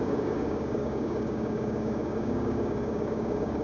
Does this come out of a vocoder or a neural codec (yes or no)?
yes